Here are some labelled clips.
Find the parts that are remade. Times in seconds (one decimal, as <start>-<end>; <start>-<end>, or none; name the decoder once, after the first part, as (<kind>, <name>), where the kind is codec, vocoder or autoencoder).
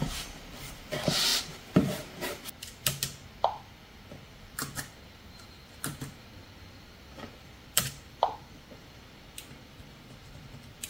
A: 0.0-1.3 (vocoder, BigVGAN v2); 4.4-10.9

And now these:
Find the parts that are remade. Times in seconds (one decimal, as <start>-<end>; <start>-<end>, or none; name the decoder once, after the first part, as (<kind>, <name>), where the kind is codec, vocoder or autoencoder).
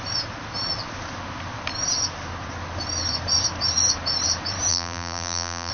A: 4.7-5.7 (vocoder, BigVGAN v2)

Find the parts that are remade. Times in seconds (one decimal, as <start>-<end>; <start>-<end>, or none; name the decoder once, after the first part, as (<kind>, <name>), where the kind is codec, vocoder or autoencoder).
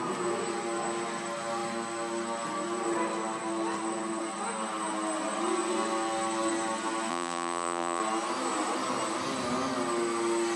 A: 7.1-8.0 (vocoder, BigVGAN v2)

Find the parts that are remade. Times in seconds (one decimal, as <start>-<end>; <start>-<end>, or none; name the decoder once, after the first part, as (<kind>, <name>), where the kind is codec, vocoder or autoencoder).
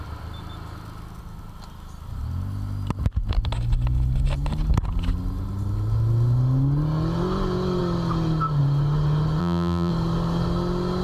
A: 9.4-9.9 (vocoder, BigVGAN v2)